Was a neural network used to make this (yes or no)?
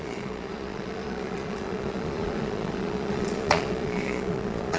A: yes